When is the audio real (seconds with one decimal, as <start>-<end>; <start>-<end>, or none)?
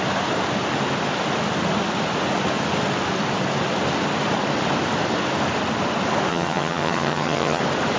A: 0.0-6.3; 7.6-8.0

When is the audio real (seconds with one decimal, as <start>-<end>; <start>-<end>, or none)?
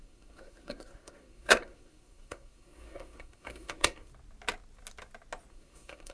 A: 4.1-5.5